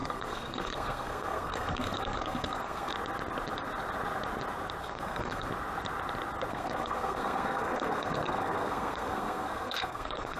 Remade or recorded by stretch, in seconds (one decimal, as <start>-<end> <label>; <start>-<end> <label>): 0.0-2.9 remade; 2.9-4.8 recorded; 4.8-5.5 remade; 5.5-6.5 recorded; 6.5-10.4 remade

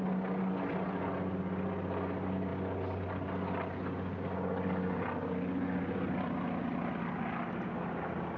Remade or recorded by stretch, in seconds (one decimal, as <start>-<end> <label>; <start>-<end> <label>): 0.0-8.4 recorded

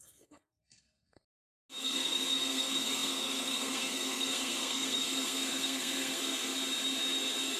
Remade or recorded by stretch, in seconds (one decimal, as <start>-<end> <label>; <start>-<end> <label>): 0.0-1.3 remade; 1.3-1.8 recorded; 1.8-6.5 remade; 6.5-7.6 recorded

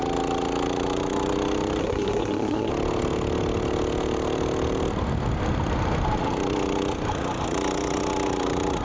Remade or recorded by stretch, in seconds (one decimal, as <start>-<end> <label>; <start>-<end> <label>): 0.0-1.8 recorded; 1.8-2.7 remade; 2.7-8.8 recorded

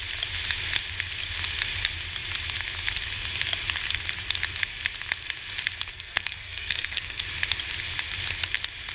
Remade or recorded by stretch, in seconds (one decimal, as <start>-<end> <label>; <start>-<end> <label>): 0.0-5.9 recorded; 5.9-7.2 remade; 7.2-8.9 recorded

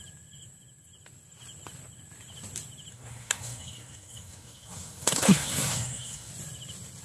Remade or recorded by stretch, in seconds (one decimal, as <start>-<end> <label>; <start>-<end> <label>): 0.0-2.9 recorded; 2.9-6.3 remade; 6.3-7.0 recorded

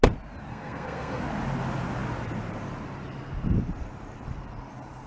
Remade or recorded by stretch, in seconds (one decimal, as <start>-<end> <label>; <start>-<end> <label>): 0.0-0.5 recorded; 0.5-1.2 remade; 1.2-5.1 recorded